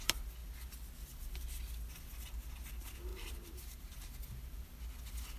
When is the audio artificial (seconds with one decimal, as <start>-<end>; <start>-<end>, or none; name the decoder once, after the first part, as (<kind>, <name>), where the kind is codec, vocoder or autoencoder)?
3.1-3.9 (vocoder, BigVGAN v2)